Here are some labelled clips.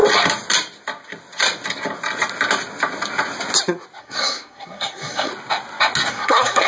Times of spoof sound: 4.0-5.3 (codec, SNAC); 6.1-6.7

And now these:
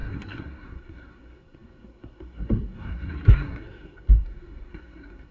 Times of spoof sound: 0.0-5.3 (codec, SNAC)

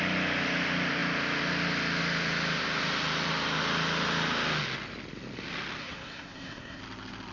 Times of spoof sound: 5.8-6.8 (codec, SNAC)

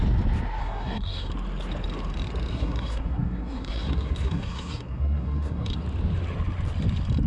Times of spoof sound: 0.6-1.3 (codec, SNAC); 2.5-5.8

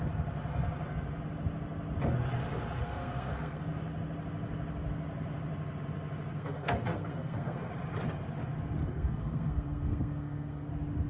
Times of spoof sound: 2.8-3.6 (codec, SNAC); 6.3-7.7; 8.8-10.7

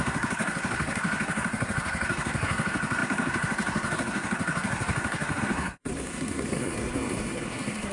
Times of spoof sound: 0.0-7.9 (codec, SNAC)

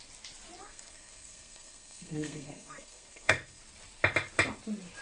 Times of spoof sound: 0.6-3.6 (codec, SNAC)

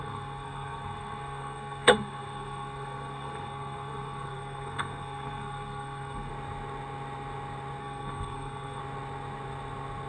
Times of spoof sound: 0.0-6.3 (codec, SNAC); 7.8-8.8